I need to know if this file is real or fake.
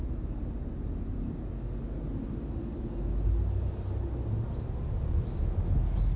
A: real